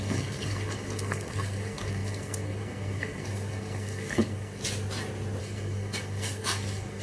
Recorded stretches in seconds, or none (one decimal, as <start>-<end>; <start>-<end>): 4.6-5.4